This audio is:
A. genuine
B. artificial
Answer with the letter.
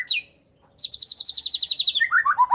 A